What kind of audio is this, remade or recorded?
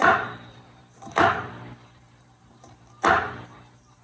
remade